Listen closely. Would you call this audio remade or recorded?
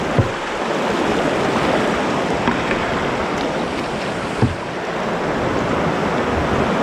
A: recorded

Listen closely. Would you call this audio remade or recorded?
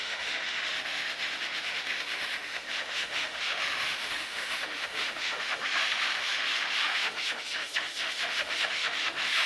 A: remade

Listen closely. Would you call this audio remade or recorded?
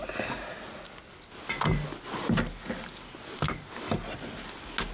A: recorded